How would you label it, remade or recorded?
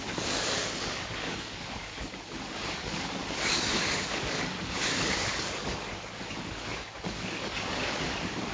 remade